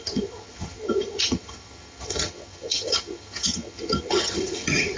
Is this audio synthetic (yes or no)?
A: yes